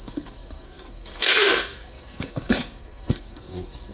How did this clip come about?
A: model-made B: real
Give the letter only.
A